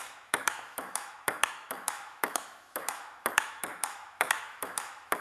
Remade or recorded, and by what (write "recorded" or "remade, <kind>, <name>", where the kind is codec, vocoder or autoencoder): remade, autoencoder, DAC-VAE